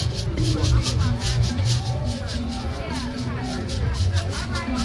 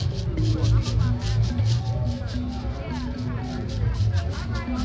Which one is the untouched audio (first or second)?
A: second